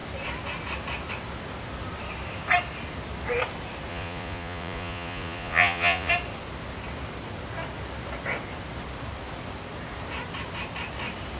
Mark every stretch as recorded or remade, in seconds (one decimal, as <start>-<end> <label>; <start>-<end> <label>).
0.0-3.9 recorded; 3.9-6.1 remade; 6.1-11.4 recorded